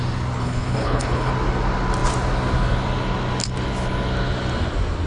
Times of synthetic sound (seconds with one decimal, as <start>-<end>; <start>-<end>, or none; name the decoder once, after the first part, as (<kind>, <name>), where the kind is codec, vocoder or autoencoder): 0.4-1.3 (codec, HILCodec)